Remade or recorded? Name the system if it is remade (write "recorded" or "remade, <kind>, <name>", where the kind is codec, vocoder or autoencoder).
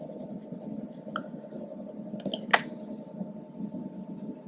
recorded